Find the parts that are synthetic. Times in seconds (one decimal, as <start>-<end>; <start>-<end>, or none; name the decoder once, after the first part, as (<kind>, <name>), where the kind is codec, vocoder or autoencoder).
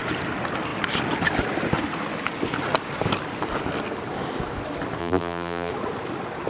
5.0-5.7 (vocoder, BigVGAN v2)